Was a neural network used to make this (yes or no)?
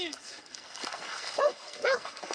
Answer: yes